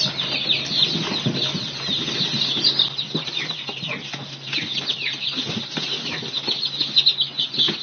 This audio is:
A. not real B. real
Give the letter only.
B